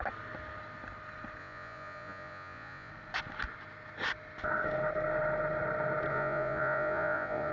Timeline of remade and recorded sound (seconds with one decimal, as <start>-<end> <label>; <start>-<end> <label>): 0.0-1.4 recorded; 1.4-2.9 remade; 2.9-6.1 recorded; 6.1-7.5 remade